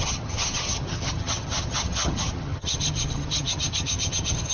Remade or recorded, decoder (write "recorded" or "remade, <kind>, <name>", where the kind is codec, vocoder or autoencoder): remade, vocoder, HiFi-GAN